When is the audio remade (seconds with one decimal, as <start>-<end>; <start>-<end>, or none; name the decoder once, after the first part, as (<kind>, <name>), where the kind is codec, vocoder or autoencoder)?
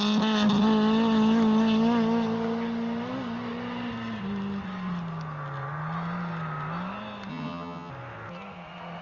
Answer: 7.3-7.9 (vocoder, HiFi-GAN)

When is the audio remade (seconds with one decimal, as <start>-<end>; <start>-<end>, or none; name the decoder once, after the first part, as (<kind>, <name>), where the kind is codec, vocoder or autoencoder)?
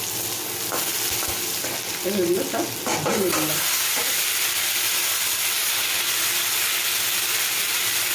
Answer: none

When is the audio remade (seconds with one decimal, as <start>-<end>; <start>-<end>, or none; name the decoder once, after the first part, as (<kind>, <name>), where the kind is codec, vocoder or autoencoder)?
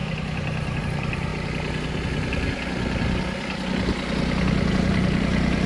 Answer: 0.0-1.3 (vocoder, BigVGAN v2); 4.7-5.7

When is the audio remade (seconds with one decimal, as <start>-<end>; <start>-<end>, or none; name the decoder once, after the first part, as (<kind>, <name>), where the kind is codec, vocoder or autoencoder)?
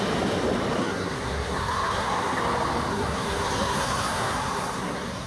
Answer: 0.8-2.4 (codec, SNAC); 2.9-5.3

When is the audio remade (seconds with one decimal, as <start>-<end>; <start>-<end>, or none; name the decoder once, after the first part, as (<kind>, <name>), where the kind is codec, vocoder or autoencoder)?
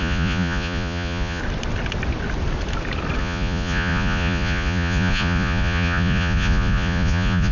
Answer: 0.0-1.4 (vocoder, Vocos); 3.2-7.5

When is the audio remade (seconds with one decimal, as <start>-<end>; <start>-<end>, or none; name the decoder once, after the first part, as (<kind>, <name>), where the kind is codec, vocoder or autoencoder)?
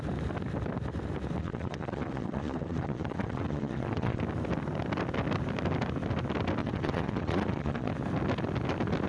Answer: 1.4-4.2 (vocoder, Vocos); 6.6-7.9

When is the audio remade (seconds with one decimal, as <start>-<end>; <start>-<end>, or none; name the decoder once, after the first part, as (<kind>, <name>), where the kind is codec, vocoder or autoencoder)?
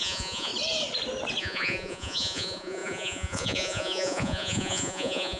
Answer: 0.0-0.5 (vocoder, Vocos); 1.4-5.4